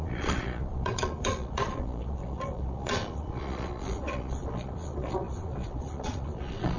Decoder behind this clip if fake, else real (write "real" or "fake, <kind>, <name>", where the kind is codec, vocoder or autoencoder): fake, vocoder, Vocos